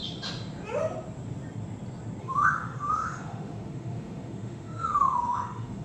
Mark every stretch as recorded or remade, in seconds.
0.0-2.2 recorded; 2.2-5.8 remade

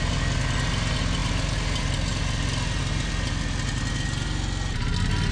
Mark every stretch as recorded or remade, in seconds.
0.0-5.3 recorded